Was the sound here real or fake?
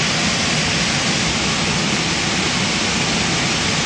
real